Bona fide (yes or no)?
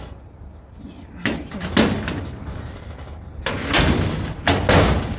yes